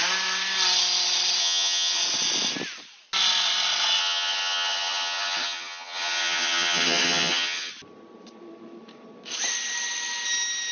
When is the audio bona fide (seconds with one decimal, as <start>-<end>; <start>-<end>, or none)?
0.0-1.4; 2.0-4.0; 7.7-10.7